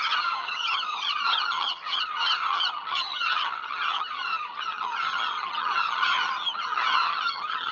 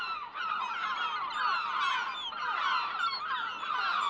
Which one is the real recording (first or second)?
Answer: second